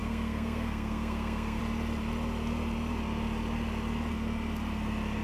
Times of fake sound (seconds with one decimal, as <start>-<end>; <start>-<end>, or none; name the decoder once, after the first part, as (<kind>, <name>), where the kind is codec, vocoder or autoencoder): 0.0-1.6 (codec, SNAC)